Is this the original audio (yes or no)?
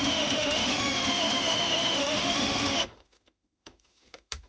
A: no